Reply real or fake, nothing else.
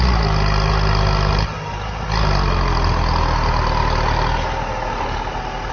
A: real